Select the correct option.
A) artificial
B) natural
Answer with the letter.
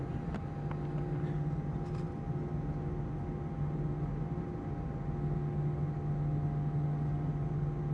B